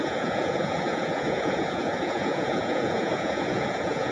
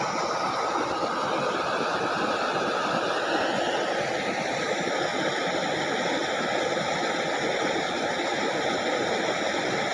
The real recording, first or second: second